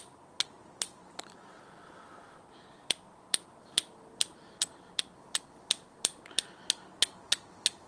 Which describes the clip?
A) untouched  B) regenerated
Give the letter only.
A